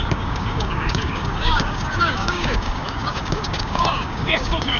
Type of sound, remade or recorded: remade